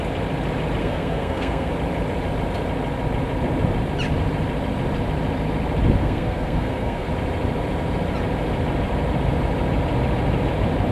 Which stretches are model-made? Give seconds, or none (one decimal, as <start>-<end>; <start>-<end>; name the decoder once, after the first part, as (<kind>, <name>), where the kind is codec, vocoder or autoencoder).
0.8-1.7 (codec, SNAC); 6.0-7.1